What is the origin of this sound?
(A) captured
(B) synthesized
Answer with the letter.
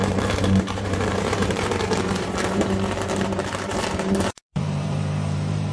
B